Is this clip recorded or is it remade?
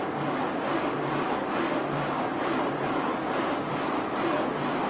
recorded